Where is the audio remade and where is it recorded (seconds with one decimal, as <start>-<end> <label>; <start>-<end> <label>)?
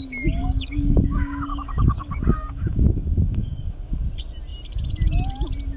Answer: 0.0-0.4 recorded; 0.4-3.9 remade; 3.9-5.8 recorded